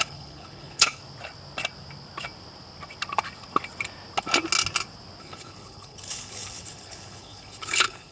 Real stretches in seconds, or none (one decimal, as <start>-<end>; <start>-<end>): 1.0-5.2